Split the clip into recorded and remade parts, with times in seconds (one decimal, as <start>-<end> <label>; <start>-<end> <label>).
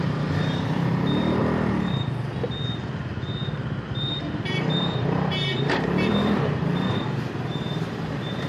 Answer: 0.0-1.4 remade; 1.4-2.8 recorded; 2.8-8.5 remade